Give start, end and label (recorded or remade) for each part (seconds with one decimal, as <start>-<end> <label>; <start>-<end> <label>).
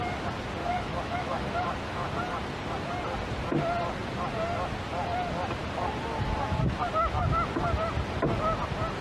0.0-0.6 recorded; 0.6-2.1 remade; 2.1-9.0 recorded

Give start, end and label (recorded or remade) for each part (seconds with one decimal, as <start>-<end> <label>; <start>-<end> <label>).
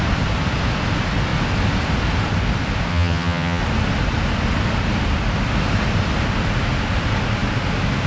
0.0-2.9 recorded; 2.9-3.6 remade; 3.6-8.1 recorded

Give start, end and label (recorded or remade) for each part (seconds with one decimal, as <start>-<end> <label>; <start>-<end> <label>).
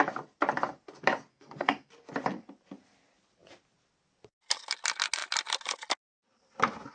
0.0-1.3 recorded; 1.3-1.9 remade; 1.9-6.9 recorded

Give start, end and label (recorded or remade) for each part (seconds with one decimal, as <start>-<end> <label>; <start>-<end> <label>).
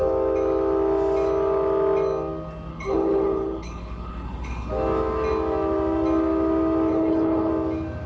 0.0-2.7 recorded; 2.7-4.7 remade; 4.7-6.9 recorded; 6.9-7.5 remade; 7.5-8.1 recorded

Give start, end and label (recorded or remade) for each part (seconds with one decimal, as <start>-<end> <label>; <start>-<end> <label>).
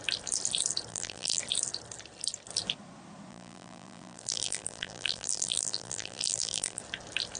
0.0-0.9 recorded; 0.9-1.4 remade; 1.4-3.3 recorded; 3.3-6.8 remade; 6.8-7.4 recorded